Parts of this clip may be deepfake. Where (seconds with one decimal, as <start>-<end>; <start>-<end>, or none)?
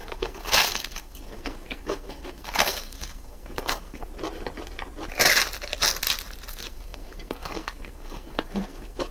0.0-4.1; 6.5-9.1